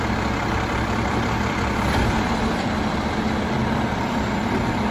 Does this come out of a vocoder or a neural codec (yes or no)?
yes